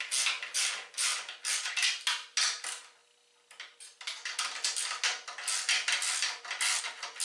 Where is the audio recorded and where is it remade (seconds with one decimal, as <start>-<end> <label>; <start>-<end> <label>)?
0.0-7.2 recorded

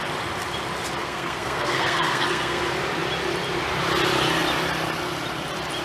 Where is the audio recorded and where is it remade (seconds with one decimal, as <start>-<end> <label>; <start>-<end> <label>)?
0.0-1.0 recorded; 1.0-2.6 remade; 2.6-5.8 recorded

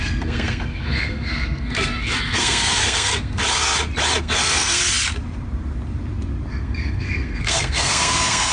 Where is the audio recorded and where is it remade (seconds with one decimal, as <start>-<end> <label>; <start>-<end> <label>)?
0.0-3.4 remade; 3.4-4.2 recorded; 4.2-4.8 remade; 4.8-6.5 recorded; 6.5-8.5 remade

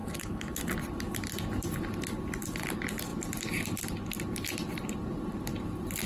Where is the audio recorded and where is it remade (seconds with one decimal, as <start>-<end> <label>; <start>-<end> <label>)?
0.0-0.6 remade; 0.6-6.1 recorded

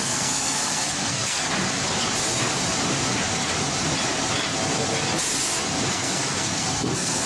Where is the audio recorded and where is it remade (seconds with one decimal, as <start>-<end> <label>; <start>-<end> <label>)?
0.0-1.5 remade; 1.5-5.9 recorded; 5.9-7.3 remade

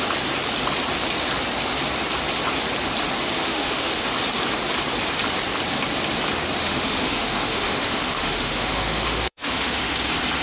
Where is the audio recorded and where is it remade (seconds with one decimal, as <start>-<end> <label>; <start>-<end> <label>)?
0.0-3.4 recorded; 3.4-4.1 remade; 4.1-6.6 recorded; 6.6-9.8 remade; 9.8-10.4 recorded

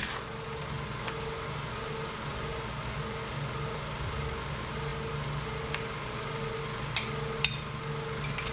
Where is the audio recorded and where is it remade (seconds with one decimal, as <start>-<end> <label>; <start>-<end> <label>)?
0.0-8.5 recorded